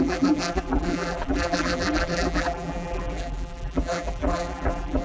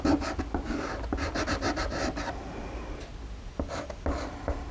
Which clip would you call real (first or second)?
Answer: second